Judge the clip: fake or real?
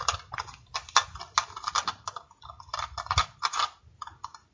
real